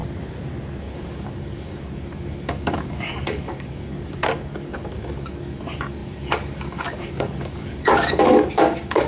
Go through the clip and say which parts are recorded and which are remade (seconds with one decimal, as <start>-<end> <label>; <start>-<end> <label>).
0.0-0.8 recorded; 0.8-9.1 remade